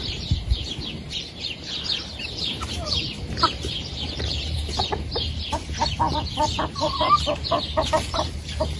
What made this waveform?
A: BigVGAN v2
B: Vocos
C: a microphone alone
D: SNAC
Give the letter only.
A